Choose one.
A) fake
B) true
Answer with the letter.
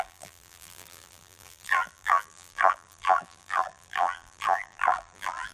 A